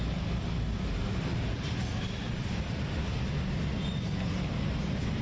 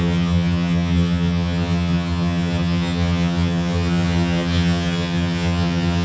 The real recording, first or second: first